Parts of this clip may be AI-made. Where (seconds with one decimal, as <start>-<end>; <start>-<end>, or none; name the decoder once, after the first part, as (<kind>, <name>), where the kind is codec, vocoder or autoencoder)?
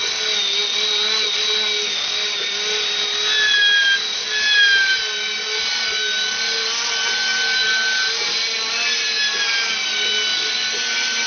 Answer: none